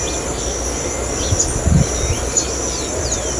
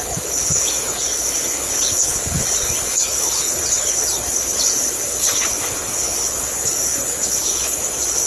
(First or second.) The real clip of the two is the first